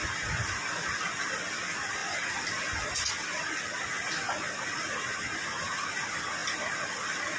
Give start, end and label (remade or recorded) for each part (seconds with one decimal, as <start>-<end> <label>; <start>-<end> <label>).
0.0-2.0 recorded; 2.0-3.1 remade; 3.1-7.4 recorded